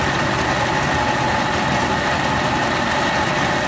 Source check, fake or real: real